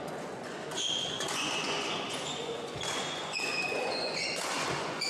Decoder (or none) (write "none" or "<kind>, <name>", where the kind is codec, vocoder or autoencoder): vocoder, Vocos